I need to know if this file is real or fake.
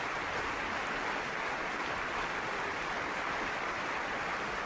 real